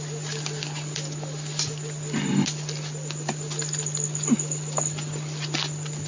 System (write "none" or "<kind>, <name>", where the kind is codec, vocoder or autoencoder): none